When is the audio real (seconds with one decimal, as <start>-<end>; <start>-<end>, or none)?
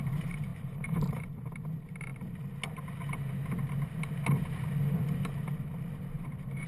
2.1-6.0